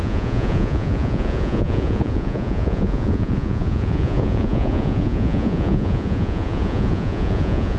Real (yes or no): no